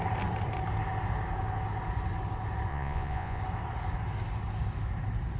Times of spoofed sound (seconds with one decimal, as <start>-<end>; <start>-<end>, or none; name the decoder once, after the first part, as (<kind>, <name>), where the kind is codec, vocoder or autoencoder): 2.7-3.4 (vocoder, Vocos)